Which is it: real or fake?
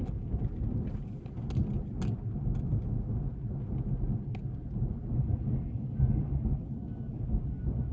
real